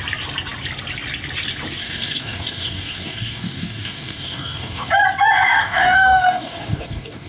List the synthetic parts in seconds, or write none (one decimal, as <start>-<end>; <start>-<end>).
1.8-4.9; 5.6-7.3